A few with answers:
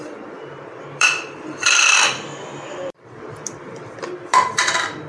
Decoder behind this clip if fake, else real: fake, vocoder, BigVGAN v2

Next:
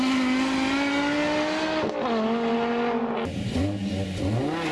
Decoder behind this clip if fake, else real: real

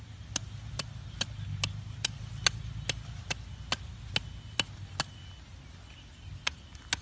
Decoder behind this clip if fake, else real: real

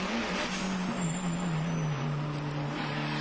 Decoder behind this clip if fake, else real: real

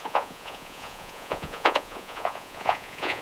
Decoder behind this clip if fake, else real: fake, vocoder, Vocos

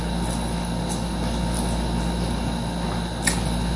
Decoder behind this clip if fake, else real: real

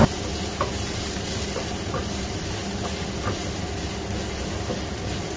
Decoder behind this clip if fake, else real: real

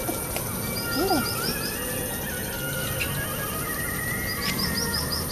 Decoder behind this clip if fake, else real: real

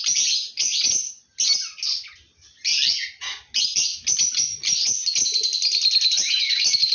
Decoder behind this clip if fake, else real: real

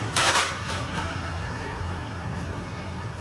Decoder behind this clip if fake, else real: fake, codec, SNAC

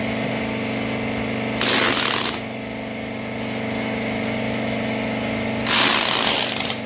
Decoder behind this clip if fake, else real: real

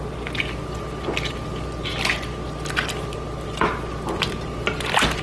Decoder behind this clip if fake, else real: real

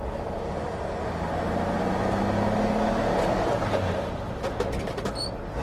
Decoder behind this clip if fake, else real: real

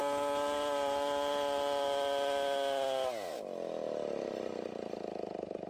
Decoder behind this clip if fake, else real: real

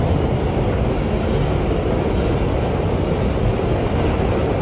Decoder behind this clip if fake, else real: real